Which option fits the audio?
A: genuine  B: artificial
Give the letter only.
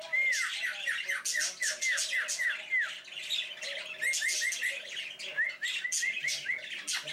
A